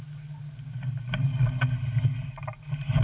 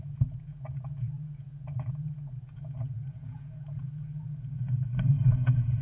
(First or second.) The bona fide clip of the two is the first